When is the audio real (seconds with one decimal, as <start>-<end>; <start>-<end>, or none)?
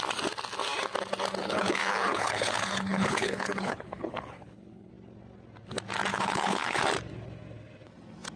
0.0-1.4; 4.9-6.1; 6.8-8.4